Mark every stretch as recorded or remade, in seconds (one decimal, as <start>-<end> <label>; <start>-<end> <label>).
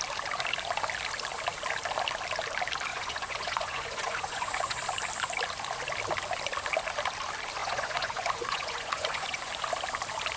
0.0-2.9 recorded; 2.9-4.8 remade; 4.8-7.6 recorded; 7.6-9.5 remade; 9.5-10.4 recorded